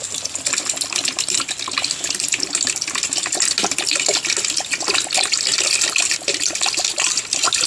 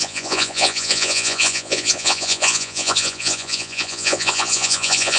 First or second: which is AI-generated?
second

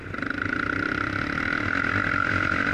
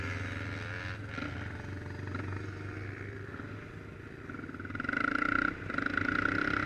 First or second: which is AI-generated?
first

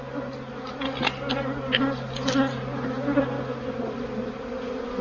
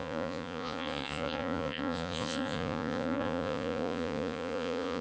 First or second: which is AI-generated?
second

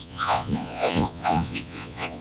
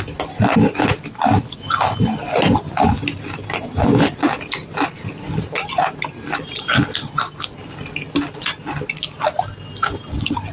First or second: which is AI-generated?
first